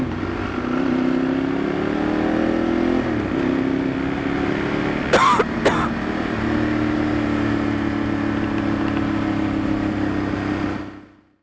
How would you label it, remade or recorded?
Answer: recorded